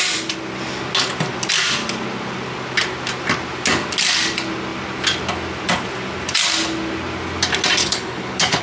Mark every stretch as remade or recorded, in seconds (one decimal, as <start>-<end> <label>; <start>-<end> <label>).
0.0-7.8 recorded; 7.8-8.6 remade